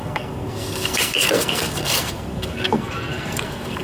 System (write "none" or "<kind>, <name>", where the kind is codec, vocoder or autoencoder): codec, SNAC